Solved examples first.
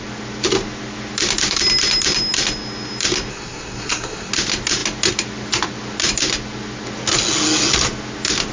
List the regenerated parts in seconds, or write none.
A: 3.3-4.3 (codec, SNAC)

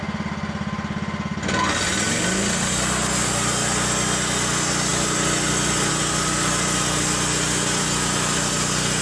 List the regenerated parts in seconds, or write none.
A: none